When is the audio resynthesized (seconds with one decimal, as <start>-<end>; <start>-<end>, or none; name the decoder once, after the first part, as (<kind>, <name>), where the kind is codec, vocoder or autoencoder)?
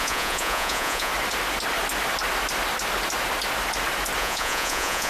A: 0.0-1.1 (vocoder, Vocos); 4.2-5.1